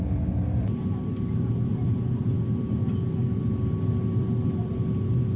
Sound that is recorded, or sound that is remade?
recorded